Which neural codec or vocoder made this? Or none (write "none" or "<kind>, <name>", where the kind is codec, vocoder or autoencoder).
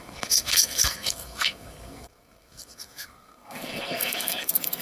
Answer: codec, SNAC